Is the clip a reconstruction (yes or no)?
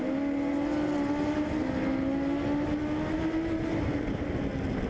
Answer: no